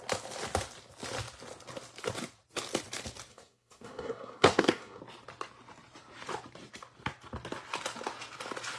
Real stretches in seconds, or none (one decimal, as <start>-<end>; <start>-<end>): 0.0-3.3; 5.0-8.8